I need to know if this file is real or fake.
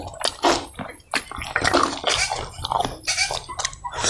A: real